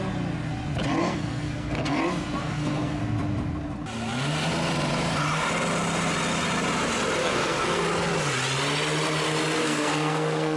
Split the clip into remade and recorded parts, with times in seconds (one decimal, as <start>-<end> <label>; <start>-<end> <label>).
0.0-1.0 recorded; 1.0-2.0 remade; 2.0-2.4 recorded; 2.4-3.0 remade; 3.0-7.2 recorded; 7.2-7.8 remade; 7.8-9.6 recorded; 9.6-10.6 remade